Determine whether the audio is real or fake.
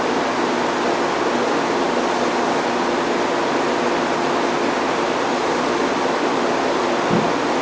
real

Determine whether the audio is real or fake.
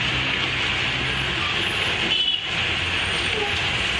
real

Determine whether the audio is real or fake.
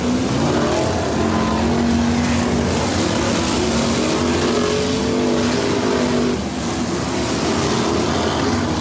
real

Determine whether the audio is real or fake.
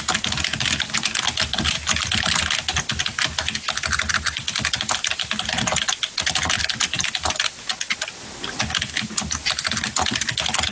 real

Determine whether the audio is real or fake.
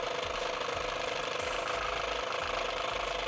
real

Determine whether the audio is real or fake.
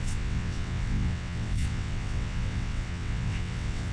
fake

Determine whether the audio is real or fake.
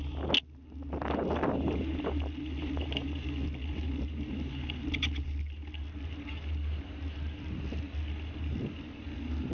real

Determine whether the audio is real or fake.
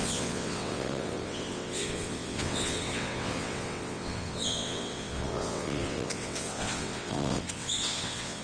fake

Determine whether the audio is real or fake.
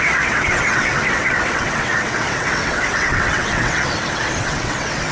fake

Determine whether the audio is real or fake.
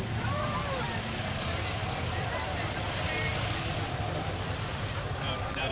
real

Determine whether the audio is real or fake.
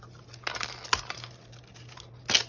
real